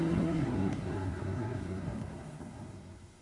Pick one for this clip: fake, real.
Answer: fake